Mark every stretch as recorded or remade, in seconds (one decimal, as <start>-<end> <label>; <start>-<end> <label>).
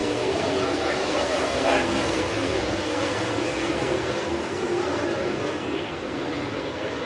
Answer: 0.0-7.1 remade